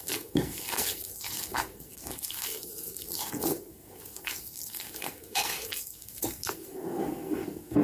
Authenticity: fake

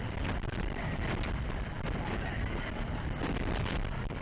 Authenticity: real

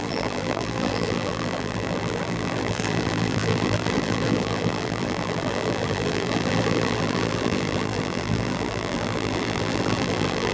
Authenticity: fake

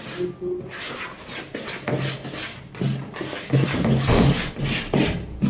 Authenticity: real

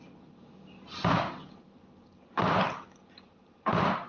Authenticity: real